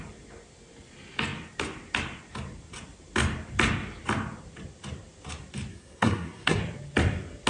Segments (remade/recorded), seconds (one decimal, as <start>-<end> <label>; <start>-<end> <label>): 0.0-5.7 recorded; 5.7-6.6 remade; 6.6-7.5 recorded